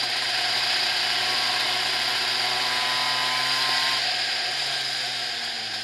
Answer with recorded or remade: recorded